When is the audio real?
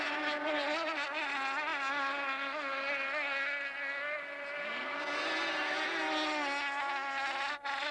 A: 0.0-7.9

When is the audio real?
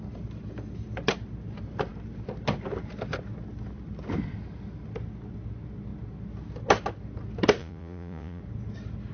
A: 0.0-7.6; 8.4-9.1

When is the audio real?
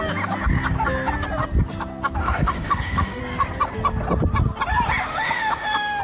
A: 0.0-2.2; 3.2-5.1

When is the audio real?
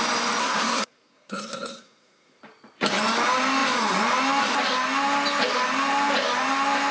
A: 0.0-0.4; 2.4-6.9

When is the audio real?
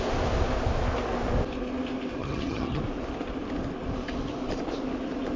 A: 0.0-2.2; 2.8-5.4